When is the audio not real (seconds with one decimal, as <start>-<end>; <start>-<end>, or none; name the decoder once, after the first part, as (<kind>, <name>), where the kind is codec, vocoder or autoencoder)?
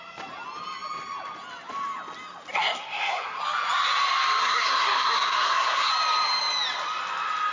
2.5-3.4 (codec, SNAC); 4.4-5.9